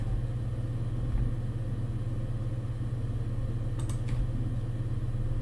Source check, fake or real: real